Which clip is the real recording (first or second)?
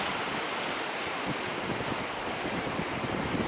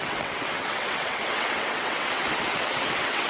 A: first